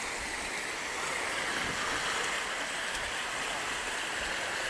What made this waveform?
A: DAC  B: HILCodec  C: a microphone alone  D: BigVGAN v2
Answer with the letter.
C